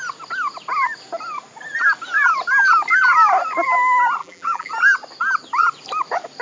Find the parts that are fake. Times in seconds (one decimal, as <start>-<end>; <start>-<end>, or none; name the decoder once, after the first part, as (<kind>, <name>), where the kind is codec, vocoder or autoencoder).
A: 4.2-4.7 (vocoder, BigVGAN v2)